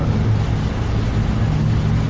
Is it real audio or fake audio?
real